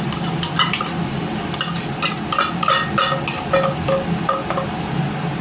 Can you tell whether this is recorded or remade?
recorded